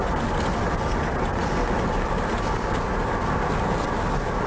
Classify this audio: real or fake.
real